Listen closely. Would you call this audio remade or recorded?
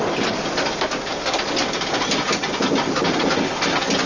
recorded